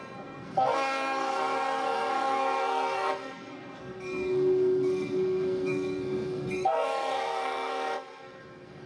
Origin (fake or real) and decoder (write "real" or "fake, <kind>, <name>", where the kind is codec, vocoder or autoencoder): fake, codec, SNAC